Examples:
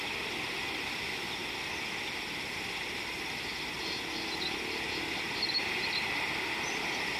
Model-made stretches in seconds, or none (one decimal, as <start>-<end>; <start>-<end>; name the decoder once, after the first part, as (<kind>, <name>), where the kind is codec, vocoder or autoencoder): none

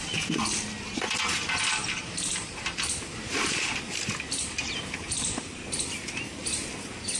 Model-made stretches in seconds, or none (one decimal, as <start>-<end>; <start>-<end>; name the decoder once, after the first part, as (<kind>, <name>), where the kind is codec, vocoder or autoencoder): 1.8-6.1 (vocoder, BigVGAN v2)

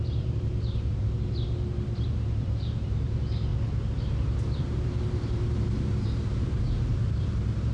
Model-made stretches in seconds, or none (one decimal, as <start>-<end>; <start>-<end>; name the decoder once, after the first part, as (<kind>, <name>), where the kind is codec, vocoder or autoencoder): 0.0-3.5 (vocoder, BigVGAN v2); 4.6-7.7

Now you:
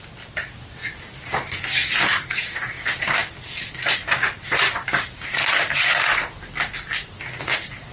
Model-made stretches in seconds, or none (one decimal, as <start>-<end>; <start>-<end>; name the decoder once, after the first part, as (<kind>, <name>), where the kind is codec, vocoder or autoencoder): none

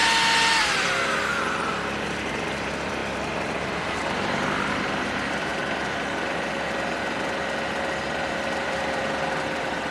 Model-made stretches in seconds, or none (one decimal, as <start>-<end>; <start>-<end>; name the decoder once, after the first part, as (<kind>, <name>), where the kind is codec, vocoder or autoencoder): 0.6-5.5 (vocoder, BigVGAN v2); 8.3-9.9